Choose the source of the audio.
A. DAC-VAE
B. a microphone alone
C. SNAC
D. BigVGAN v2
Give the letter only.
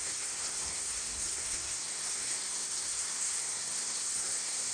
C